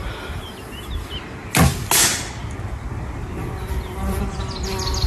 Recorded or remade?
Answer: recorded